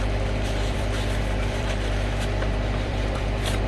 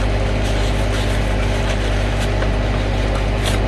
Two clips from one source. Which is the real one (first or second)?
second